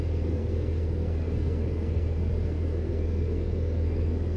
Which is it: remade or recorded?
remade